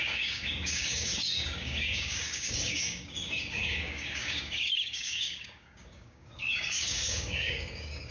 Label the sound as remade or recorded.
remade